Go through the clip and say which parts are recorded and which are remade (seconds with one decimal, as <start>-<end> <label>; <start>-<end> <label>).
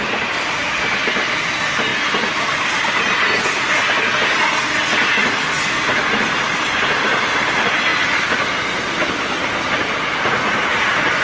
0.0-11.2 recorded